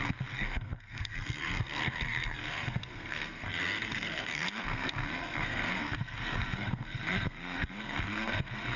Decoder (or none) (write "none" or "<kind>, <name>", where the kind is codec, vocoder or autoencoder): codec, SNAC